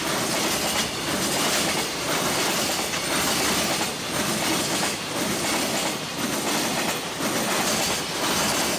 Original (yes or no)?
yes